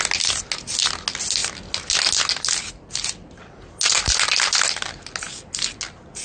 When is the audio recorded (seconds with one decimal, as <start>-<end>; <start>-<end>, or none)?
0.0-6.2